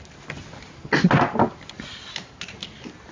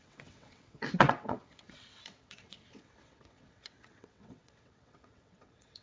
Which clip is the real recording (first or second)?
first